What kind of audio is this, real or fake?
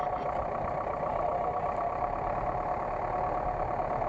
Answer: real